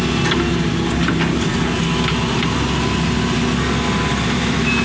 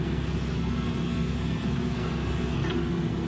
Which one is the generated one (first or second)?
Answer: second